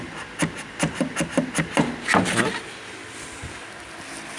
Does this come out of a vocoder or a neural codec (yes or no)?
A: no